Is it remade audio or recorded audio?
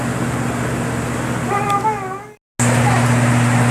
recorded